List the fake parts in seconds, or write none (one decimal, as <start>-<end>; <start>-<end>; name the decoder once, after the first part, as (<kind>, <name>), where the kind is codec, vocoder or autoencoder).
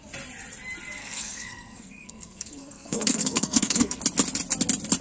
1.0-4.0 (codec, SNAC)